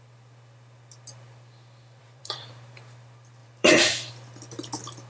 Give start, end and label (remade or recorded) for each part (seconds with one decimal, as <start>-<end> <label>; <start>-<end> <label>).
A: 0.0-2.0 recorded; 2.0-2.5 remade; 2.5-3.4 recorded; 3.4-4.1 remade; 4.1-5.1 recorded